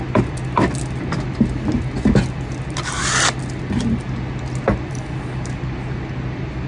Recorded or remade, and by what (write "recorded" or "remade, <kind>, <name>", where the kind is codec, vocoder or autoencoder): recorded